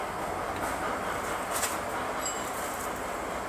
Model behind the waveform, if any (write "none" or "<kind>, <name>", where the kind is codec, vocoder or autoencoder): none